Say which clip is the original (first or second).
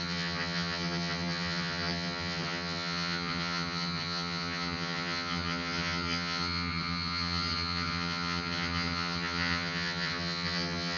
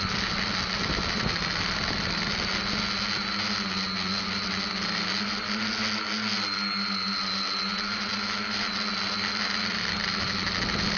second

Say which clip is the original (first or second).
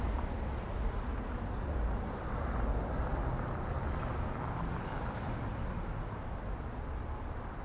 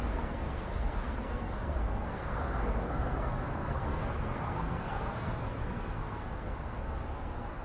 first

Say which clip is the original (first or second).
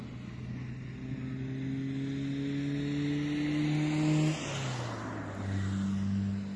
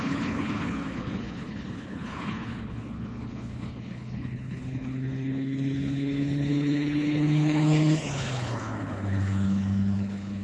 first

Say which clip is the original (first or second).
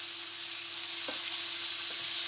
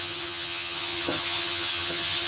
first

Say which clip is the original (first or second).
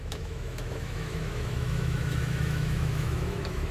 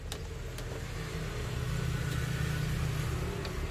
second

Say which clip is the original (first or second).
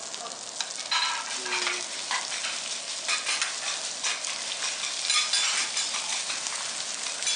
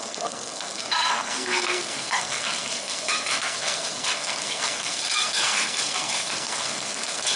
first